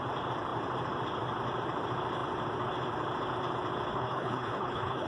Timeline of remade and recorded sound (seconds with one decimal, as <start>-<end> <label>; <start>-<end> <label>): 0.0-3.9 recorded; 3.9-5.1 remade

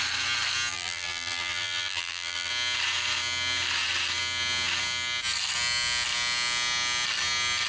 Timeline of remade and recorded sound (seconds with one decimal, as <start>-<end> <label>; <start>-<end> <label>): 0.0-0.7 recorded; 0.7-2.5 remade; 2.5-7.7 recorded